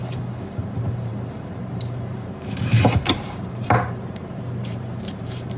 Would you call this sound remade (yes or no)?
yes